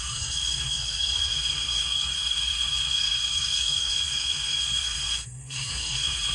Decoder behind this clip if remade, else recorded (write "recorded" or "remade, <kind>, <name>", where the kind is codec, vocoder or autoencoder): remade, codec, SNAC